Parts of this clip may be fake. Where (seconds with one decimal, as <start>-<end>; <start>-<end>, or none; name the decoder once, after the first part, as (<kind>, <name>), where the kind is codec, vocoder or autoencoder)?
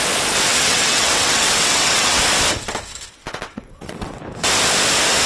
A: 0.5-2.2 (vocoder, WaveNeXt); 3.2-4.2